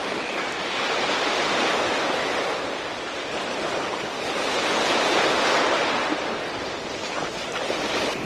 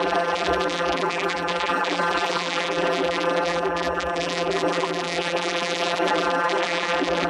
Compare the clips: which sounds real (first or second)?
first